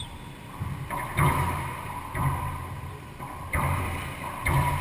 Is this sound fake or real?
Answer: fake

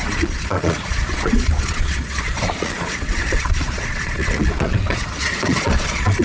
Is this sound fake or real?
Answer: fake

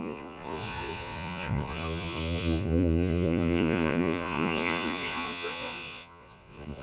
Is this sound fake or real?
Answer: fake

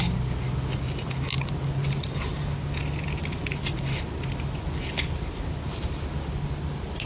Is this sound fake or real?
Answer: real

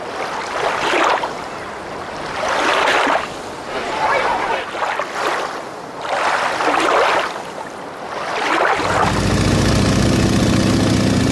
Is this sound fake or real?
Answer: real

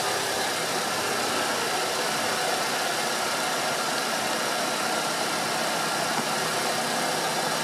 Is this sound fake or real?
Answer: real